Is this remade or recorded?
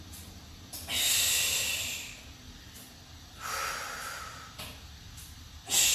remade